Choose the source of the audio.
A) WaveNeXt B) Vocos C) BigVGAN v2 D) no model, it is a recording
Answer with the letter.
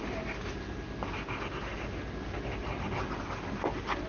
D